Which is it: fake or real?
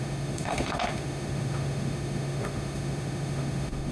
fake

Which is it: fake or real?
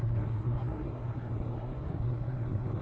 fake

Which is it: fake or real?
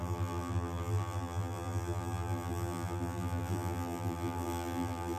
fake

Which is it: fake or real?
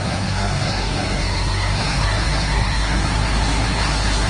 fake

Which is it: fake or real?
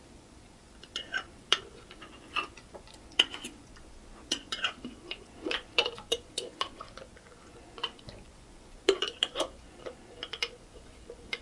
fake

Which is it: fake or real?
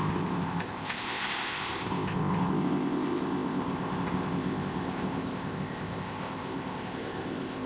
fake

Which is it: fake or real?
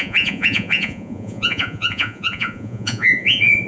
fake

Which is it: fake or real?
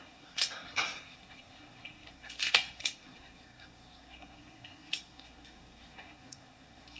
fake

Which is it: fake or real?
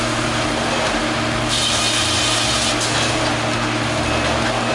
real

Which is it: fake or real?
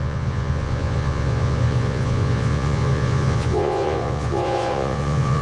fake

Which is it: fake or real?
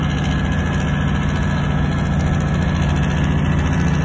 real